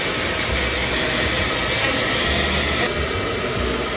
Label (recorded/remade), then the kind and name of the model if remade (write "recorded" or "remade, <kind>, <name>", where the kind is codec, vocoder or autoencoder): recorded